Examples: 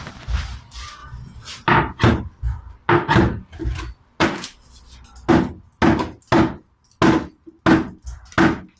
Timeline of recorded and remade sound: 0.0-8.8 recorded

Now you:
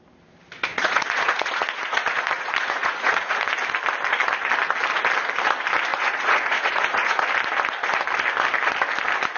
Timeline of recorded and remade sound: 0.0-0.7 recorded; 0.7-3.5 remade; 3.5-5.9 recorded; 5.9-7.2 remade; 7.2-9.4 recorded

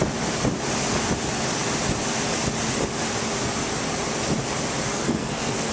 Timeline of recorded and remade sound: 0.0-4.9 recorded; 4.9-5.7 remade